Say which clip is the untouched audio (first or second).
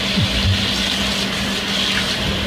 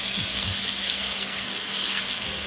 first